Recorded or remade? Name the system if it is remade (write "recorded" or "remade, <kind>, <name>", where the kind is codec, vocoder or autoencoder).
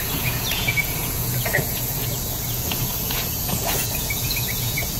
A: remade, vocoder, Vocos